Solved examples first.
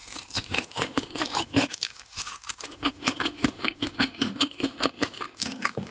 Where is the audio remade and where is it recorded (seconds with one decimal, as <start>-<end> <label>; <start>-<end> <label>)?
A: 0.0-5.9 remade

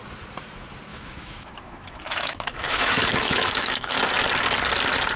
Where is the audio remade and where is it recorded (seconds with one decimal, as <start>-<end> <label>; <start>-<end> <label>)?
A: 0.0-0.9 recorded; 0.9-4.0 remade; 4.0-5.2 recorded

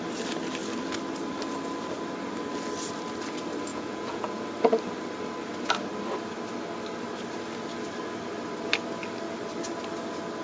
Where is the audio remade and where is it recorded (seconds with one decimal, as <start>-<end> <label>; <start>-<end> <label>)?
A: 0.0-3.7 recorded; 3.7-4.4 remade; 4.4-10.4 recorded

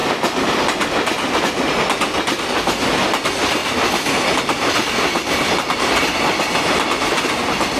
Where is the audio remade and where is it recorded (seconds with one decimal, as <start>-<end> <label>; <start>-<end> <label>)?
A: 0.0-7.8 recorded

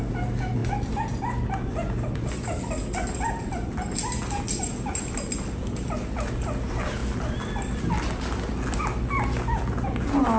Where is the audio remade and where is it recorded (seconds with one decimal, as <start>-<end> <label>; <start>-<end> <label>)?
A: 0.0-10.4 recorded

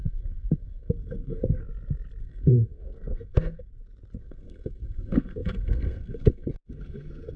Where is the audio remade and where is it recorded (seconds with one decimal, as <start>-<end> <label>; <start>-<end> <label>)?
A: 0.0-1.6 remade; 1.6-2.2 recorded; 2.2-3.7 remade; 3.7-4.2 recorded; 4.2-7.4 remade

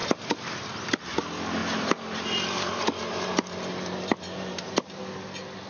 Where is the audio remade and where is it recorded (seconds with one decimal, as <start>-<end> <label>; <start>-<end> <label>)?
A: 0.0-1.2 remade; 1.2-1.6 recorded; 1.6-5.0 remade; 5.0-5.7 recorded

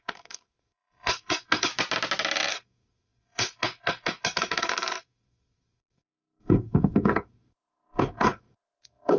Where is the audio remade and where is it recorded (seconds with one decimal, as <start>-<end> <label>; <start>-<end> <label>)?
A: 0.0-1.7 remade; 1.7-2.5 recorded; 2.5-9.2 remade